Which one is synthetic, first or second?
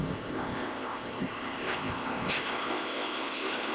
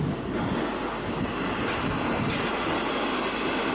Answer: first